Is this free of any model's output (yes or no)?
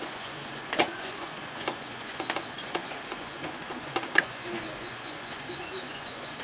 no